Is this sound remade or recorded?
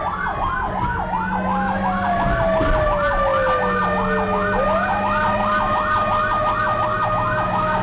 recorded